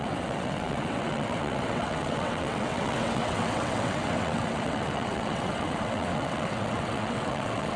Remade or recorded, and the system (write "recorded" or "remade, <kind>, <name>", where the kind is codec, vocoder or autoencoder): remade, vocoder, WaveNeXt